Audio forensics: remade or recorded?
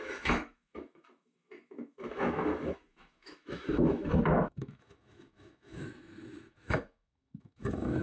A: remade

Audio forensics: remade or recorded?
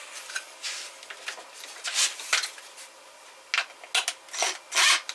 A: recorded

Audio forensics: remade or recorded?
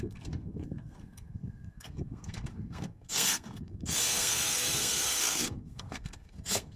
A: remade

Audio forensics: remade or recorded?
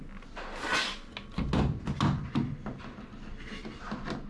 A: recorded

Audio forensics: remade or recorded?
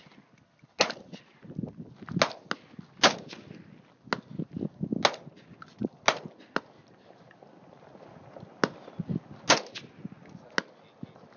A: recorded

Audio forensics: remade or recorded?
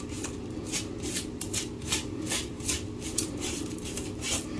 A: recorded